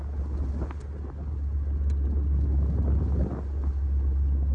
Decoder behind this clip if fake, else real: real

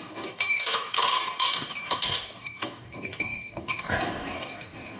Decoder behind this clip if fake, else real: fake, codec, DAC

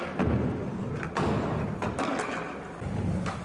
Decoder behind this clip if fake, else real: real